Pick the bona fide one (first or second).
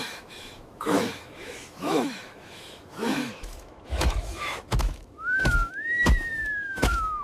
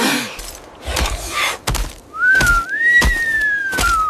second